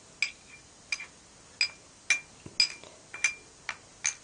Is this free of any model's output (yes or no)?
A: yes